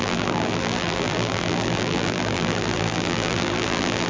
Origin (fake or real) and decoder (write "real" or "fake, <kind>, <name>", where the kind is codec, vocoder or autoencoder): fake, vocoder, BigVGAN v2